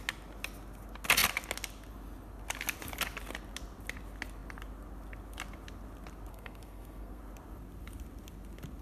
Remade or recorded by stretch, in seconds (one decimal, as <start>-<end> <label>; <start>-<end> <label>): 0.0-6.3 recorded; 6.3-7.2 remade; 7.2-8.8 recorded